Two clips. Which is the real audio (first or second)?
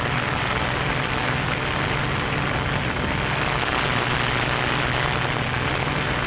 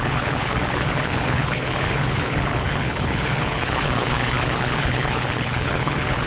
first